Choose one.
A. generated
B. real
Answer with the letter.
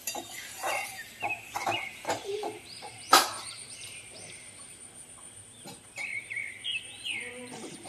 A